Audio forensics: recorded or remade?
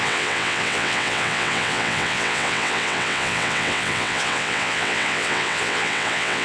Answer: remade